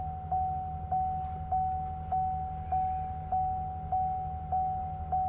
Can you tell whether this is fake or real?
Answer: real